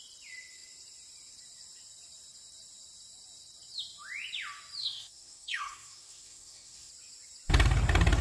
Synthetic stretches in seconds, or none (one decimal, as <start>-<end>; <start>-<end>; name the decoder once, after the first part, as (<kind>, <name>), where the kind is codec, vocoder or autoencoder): 4.8-6.9 (codec, SNAC)